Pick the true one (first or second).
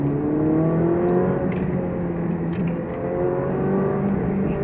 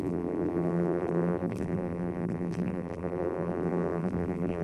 first